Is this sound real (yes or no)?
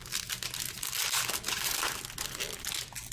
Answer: yes